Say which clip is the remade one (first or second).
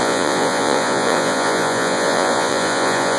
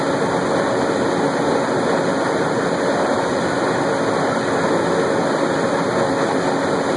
first